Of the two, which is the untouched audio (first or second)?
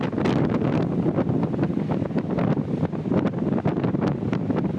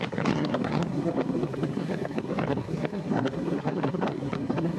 first